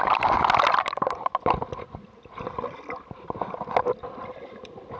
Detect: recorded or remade recorded